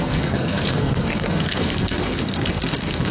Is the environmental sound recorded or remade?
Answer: remade